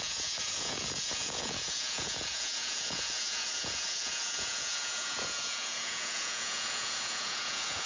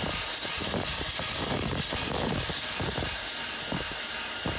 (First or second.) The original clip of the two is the second